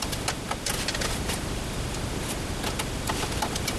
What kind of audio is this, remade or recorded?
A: recorded